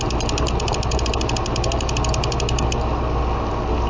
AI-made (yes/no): no